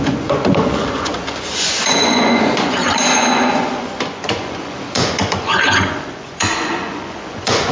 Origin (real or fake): fake